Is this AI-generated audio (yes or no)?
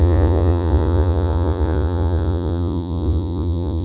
yes